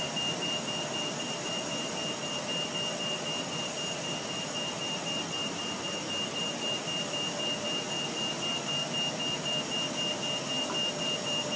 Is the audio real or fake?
real